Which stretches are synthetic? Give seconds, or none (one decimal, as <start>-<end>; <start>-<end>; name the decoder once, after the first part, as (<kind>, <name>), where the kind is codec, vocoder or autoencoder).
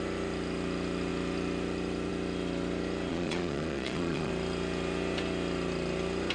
3.1-4.3 (vocoder, Vocos)